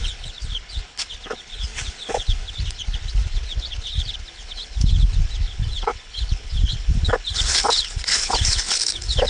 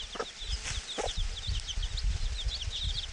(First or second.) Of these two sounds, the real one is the second